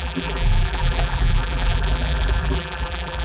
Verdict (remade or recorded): remade